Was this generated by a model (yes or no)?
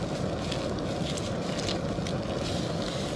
no